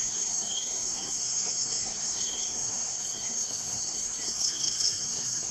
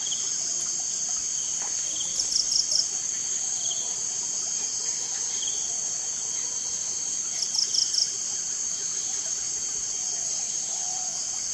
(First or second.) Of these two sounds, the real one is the second